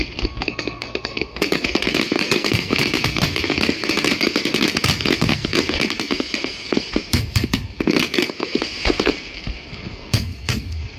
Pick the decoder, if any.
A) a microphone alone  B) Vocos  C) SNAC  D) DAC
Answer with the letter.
C